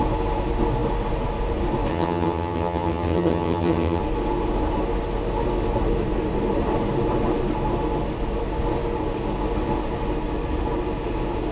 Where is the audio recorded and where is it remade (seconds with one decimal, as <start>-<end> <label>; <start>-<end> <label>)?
0.0-1.9 recorded; 1.9-4.0 remade; 4.0-11.5 recorded